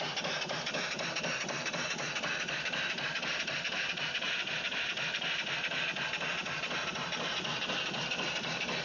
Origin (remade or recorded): remade